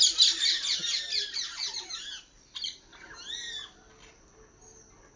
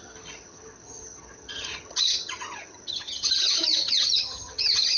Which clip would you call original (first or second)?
first